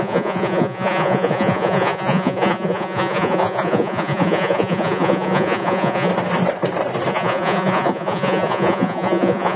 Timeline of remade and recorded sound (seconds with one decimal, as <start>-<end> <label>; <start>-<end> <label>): 0.0-6.1 remade; 6.1-7.1 recorded; 7.1-9.6 remade